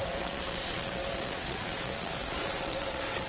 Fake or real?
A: fake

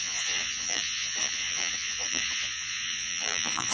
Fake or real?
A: fake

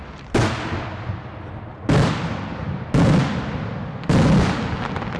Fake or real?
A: real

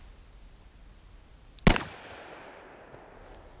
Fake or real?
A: real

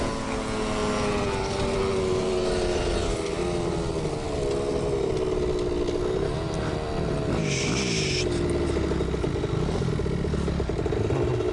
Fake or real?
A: real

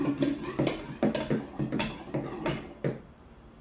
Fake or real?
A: real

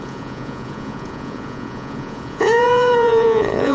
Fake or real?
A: fake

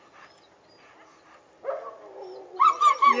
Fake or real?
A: real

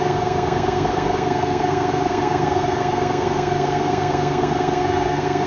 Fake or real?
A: fake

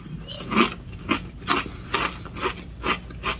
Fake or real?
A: real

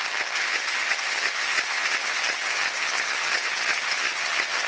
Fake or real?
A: fake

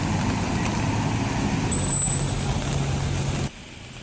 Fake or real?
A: real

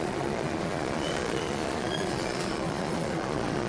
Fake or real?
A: fake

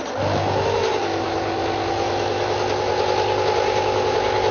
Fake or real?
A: real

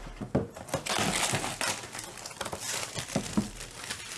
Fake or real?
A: real